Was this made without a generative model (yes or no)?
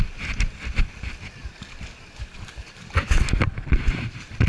yes